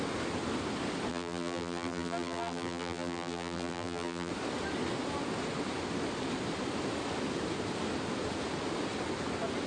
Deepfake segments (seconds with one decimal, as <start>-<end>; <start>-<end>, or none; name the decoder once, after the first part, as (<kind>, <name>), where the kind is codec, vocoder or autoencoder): 1.1-4.3 (vocoder, BigVGAN v2)